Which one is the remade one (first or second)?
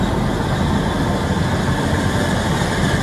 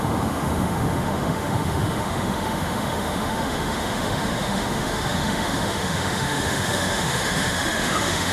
second